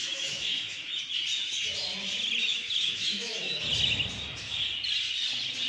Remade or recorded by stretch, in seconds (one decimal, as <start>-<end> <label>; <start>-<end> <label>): 0.0-1.0 remade; 1.0-2.5 recorded; 2.5-3.6 remade; 3.6-5.7 recorded